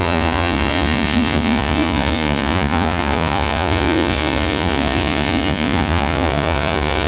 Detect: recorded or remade remade